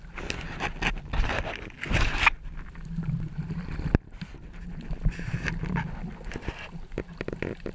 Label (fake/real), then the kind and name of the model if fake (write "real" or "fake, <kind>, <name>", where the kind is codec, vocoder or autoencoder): real